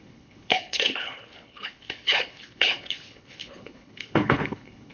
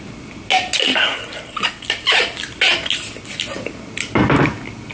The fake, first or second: first